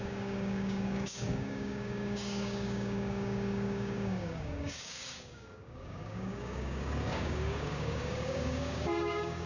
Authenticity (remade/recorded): remade